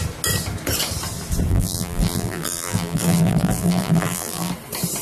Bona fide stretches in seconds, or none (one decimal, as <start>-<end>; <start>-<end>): 0.0-1.5; 4.5-5.0